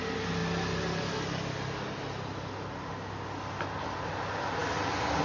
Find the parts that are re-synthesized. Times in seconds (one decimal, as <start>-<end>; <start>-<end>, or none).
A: none